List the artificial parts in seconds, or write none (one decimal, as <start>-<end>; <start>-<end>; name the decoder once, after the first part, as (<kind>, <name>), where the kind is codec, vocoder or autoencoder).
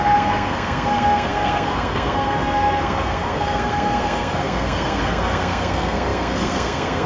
0.0-7.1 (codec, SNAC)